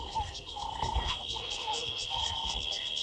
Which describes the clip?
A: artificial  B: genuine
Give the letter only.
A